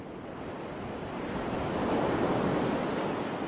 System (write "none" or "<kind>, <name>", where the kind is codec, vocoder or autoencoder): none